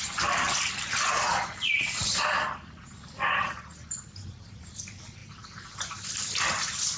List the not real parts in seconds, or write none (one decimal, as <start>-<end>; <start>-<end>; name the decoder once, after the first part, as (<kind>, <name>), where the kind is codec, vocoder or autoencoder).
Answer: none